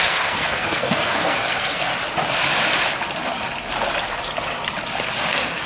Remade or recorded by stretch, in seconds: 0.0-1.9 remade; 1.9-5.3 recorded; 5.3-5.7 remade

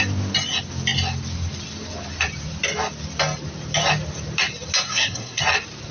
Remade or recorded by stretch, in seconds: 0.0-4.9 recorded; 4.9-5.4 remade; 5.4-5.9 recorded

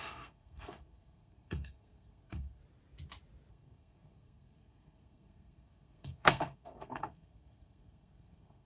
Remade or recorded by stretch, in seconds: 0.0-2.6 remade; 2.6-3.5 recorded; 3.5-8.7 remade

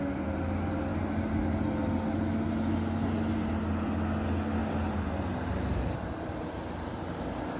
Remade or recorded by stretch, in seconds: 0.0-7.6 recorded